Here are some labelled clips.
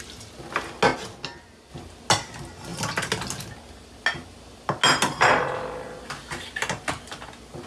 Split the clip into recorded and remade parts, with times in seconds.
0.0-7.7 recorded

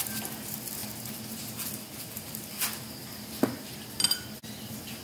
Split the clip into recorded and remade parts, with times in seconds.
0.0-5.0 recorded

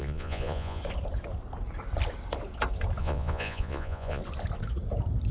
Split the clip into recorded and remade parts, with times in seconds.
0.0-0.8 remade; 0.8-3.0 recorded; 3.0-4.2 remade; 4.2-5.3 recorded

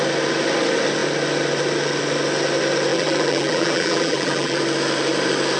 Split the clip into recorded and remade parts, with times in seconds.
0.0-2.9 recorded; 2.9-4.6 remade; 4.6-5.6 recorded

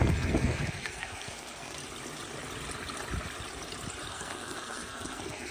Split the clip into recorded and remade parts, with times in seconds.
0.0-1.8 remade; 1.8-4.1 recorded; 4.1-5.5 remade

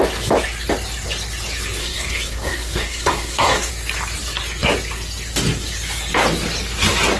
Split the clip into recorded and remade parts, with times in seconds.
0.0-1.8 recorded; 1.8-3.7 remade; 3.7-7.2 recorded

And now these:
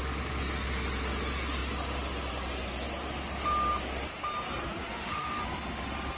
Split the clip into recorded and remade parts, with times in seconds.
0.0-4.9 recorded; 4.9-5.4 remade; 5.4-6.2 recorded

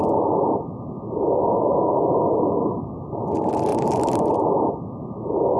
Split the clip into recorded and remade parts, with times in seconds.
0.0-3.7 recorded; 3.7-4.3 remade; 4.3-5.6 recorded